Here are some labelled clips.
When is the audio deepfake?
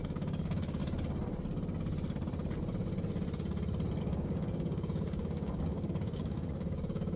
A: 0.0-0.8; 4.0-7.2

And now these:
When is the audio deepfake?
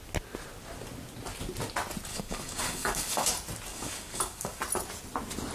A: 2.1-3.3; 3.7-4.6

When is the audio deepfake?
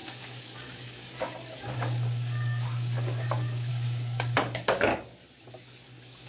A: 0.0-4.9; 5.5-6.3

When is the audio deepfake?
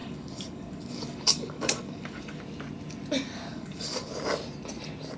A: 0.0-2.4; 3.5-4.1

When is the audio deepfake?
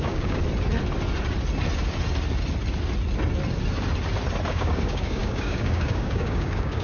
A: 0.0-0.4; 4.5-6.8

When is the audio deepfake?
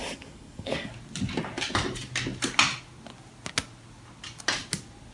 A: 0.0-0.9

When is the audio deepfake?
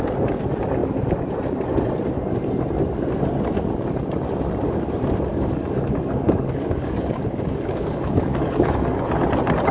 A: 5.3-9.1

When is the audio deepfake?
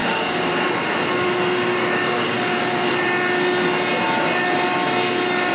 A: 0.0-0.5; 1.8-2.9